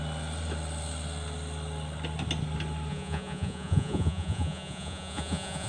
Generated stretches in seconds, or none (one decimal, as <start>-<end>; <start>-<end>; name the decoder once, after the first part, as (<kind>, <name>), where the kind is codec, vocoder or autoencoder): 2.9-5.7 (vocoder, Vocos)